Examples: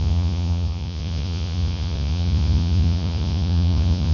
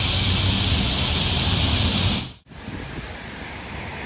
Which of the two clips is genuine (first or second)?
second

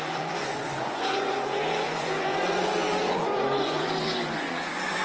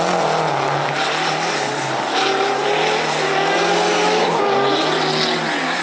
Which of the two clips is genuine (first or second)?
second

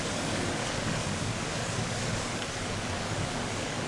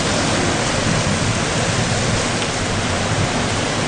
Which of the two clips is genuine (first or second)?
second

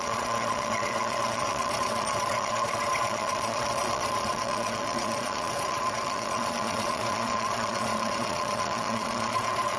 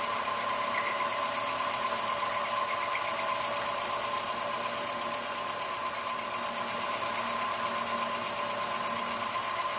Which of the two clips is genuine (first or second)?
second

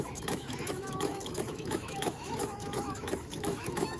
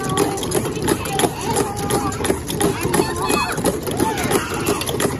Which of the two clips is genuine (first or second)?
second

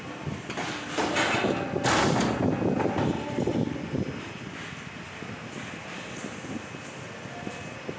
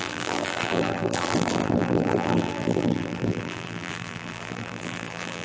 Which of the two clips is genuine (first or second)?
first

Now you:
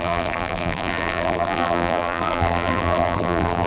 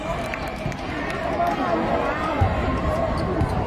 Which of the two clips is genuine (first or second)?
second